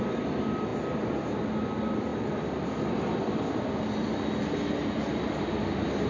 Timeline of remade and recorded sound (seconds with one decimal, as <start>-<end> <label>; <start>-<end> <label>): 0.0-6.1 recorded